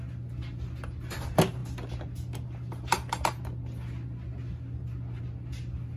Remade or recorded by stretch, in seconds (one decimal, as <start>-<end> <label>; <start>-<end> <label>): 0.0-6.0 recorded